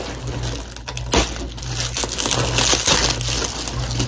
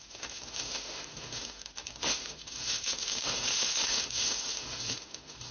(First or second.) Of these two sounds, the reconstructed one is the second